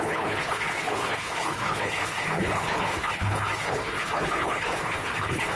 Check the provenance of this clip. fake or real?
fake